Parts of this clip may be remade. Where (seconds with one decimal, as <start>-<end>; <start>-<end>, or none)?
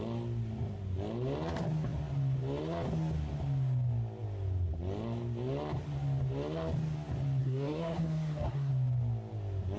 7.4-8.7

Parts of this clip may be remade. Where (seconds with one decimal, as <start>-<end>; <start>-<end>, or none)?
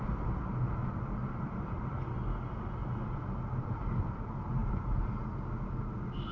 1.2-1.9; 4.6-5.2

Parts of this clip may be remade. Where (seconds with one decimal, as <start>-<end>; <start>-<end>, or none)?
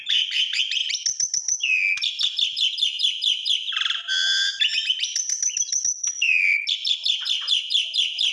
none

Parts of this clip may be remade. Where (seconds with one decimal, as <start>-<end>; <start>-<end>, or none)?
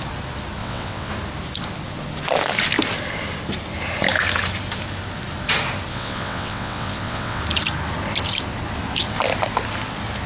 0.6-1.1; 5.9-7.4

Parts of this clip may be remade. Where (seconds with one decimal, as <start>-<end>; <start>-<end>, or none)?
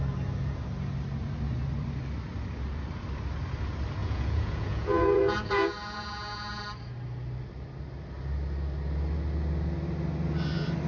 4.0-6.6